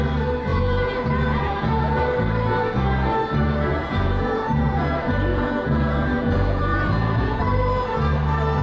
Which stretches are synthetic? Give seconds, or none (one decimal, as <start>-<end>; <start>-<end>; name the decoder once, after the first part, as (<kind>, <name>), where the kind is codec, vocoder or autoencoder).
0.5-2.0 (vocoder, Vocos); 3.7-4.8; 5.3-7.4